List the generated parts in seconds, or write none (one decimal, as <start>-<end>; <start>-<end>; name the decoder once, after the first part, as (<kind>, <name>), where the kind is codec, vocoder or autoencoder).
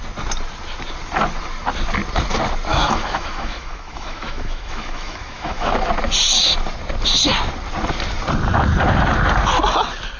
2.7-5.7 (autoencoder, DAC-VAE)